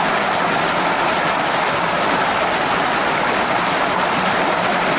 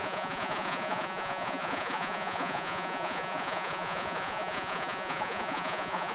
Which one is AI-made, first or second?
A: second